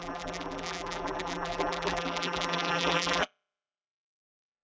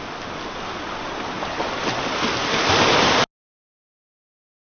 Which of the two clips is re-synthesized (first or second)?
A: first